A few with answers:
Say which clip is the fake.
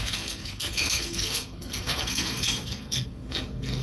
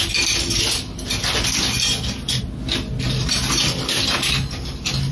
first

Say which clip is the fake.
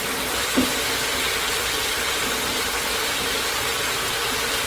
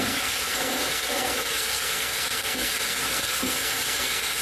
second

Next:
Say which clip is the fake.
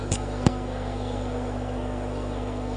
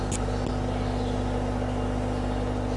first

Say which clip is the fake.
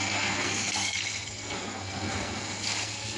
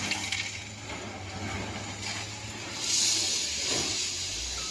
first